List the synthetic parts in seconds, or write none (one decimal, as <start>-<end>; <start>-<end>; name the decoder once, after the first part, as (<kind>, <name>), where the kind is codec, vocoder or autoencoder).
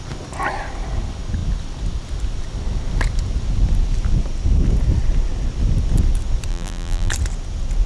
6.5-7.1 (vocoder, BigVGAN v2)